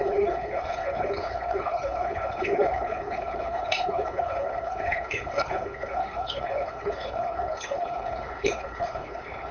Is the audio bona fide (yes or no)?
no